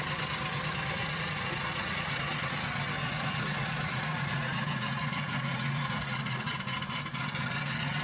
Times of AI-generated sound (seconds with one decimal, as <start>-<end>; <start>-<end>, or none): 1.0-2.5; 3.0-6.5